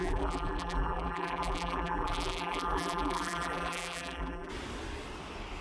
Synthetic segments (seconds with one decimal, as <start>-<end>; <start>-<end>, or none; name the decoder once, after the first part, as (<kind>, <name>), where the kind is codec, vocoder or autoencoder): 0.0-4.5 (vocoder, BigVGAN v2)